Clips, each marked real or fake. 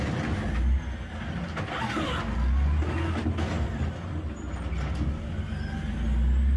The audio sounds real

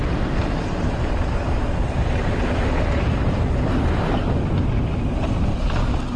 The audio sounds real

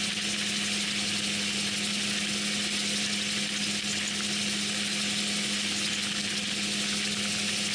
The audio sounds real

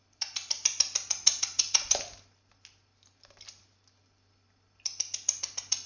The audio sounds real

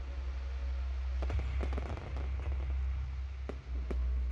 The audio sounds real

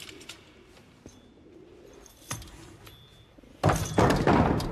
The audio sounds real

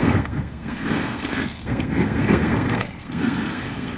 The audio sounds fake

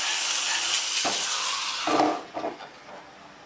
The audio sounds real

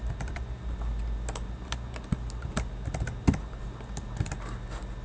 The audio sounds real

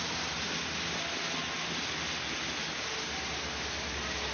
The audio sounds real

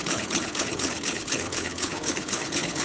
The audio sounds fake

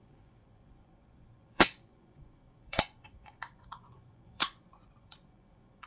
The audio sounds fake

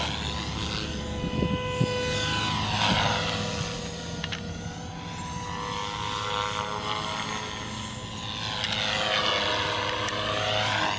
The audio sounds real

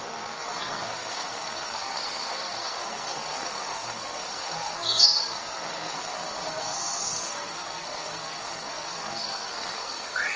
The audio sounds fake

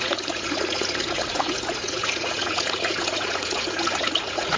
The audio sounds fake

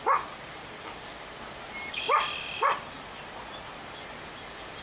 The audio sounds real